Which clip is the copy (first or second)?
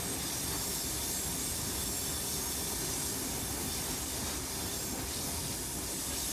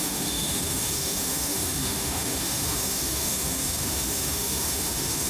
second